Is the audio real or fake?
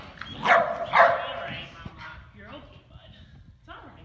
real